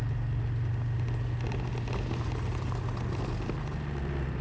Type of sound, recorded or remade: recorded